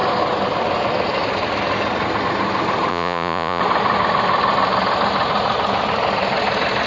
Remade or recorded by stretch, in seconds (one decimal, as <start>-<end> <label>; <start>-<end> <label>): 0.0-2.9 recorded; 2.9-3.6 remade; 3.6-6.9 recorded

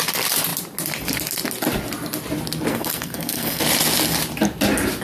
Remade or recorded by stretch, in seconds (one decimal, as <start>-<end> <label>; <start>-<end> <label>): 0.0-2.7 recorded; 2.7-3.6 remade; 3.6-5.0 recorded